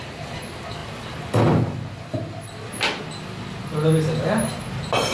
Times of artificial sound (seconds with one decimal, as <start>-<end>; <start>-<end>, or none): none